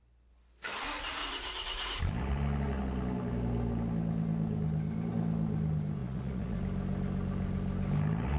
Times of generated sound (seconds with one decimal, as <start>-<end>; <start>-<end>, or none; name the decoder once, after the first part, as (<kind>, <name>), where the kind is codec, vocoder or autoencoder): 1.2-2.0 (vocoder, Vocos); 6.0-6.6